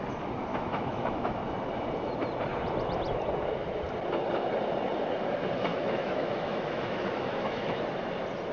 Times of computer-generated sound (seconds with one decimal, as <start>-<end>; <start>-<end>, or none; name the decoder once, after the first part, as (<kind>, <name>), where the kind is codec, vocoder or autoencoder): 0.5-1.4 (autoencoder, DAC-VAE); 5.7-7.8